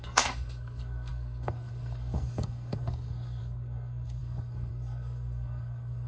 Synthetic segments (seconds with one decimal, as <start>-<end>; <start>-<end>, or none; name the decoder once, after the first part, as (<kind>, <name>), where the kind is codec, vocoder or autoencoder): 0.0-6.1 (codec, SNAC)

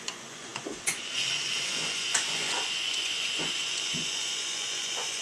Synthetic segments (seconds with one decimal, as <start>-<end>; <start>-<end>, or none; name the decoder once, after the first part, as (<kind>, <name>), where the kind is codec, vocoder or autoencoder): 0.0-5.2 (vocoder, Vocos)

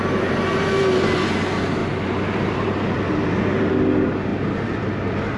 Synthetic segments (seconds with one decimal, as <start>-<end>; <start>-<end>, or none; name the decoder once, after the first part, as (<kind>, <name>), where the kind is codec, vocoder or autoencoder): 1.8-3.7 (vocoder, BigVGAN v2); 4.3-5.4

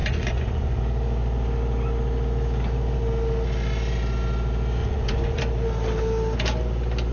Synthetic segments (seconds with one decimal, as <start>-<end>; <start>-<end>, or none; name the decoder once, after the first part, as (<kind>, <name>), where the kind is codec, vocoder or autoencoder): 0.0-0.8 (vocoder, Vocos); 4.8-5.4

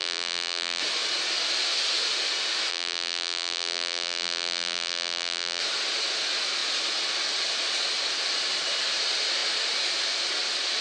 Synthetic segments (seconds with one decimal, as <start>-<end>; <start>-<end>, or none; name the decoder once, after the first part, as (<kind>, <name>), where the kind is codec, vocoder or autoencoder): 0.0-0.8 (vocoder, BigVGAN v2); 2.7-5.6